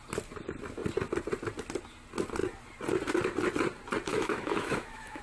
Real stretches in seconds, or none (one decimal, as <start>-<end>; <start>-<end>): 0.0-4.1